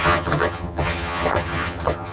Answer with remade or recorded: remade